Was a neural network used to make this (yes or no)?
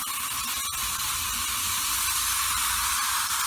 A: no